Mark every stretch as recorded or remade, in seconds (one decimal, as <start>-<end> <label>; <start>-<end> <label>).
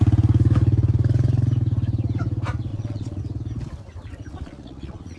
0.0-2.7 recorded; 2.7-3.2 remade; 3.2-4.3 recorded; 4.3-5.2 remade